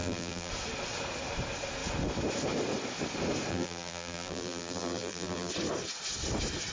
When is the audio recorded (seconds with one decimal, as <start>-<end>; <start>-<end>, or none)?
0.5-3.5; 5.5-6.7